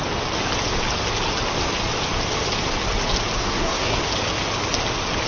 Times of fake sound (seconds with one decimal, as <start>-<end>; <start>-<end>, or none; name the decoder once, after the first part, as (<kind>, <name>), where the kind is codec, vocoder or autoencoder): 3.4-4.0 (codec, SNAC)